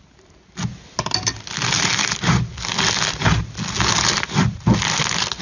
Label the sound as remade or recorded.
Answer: recorded